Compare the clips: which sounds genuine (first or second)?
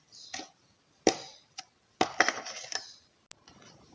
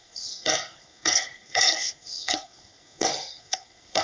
first